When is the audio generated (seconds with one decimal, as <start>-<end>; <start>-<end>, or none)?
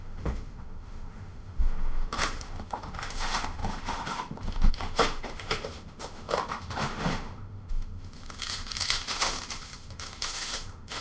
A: 0.0-11.0